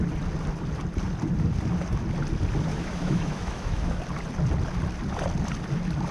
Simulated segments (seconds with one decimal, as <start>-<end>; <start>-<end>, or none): 2.7-4.0